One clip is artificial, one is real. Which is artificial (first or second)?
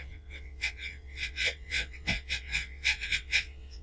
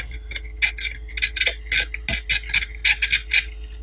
first